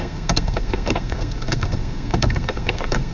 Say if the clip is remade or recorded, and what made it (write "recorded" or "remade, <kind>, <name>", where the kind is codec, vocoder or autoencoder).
remade, codec, SNAC